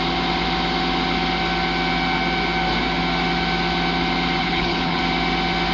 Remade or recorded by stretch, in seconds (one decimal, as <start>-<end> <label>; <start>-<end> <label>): 0.0-4.4 recorded; 4.4-5.0 remade; 5.0-5.7 recorded